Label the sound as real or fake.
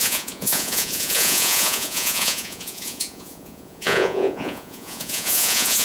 fake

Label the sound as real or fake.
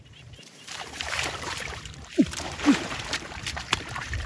fake